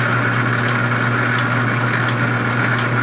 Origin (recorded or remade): recorded